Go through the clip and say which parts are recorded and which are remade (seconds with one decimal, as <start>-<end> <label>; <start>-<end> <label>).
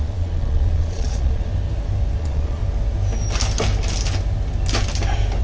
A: 0.0-1.5 remade; 1.5-2.2 recorded; 2.2-2.6 remade; 2.6-5.4 recorded